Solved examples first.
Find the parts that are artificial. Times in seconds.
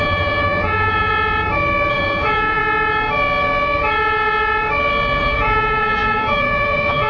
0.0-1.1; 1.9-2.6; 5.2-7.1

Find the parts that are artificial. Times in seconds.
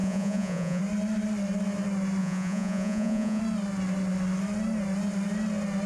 0.0-0.8; 2.2-3.4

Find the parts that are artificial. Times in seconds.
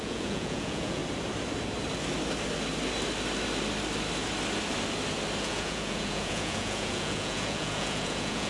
0.0-1.0; 5.4-8.5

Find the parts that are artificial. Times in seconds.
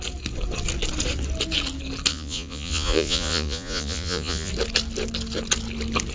2.1-4.5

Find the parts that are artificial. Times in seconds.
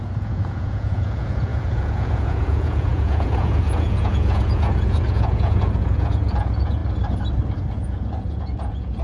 0.0-6.8; 7.7-9.0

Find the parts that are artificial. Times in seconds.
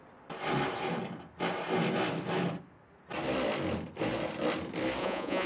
5.0-5.5